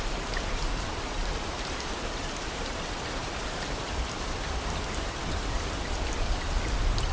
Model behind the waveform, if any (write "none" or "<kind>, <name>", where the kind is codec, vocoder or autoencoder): none